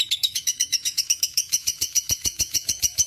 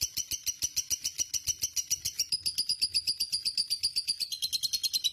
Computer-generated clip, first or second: first